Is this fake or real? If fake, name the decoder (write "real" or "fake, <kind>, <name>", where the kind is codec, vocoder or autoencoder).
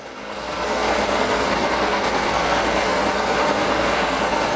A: fake, codec, SNAC